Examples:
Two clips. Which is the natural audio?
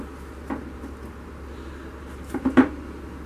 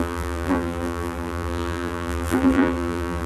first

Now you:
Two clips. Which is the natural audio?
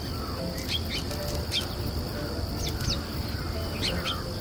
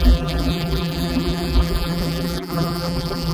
first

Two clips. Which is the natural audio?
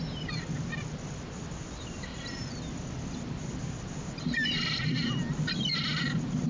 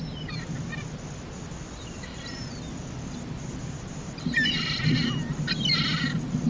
second